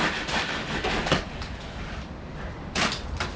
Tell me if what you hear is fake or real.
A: real